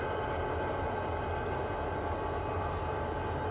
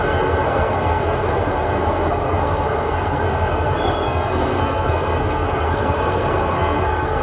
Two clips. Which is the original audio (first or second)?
first